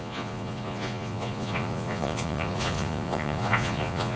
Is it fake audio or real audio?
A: fake